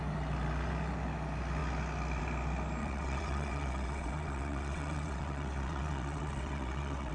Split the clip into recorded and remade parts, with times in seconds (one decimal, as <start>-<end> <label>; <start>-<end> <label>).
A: 0.0-2.8 recorded; 2.8-7.1 remade

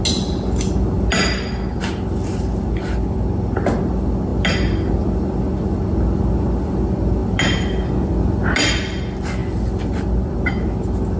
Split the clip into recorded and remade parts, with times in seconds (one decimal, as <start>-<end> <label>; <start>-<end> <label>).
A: 0.0-11.2 recorded